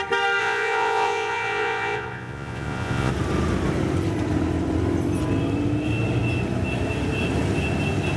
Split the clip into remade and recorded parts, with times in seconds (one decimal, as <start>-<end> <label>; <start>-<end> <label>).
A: 0.0-0.4 recorded; 0.4-3.1 remade; 3.1-8.2 recorded